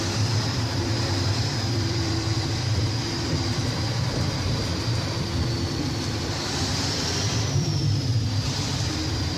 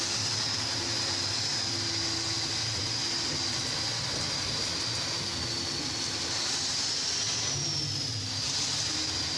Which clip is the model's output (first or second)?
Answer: first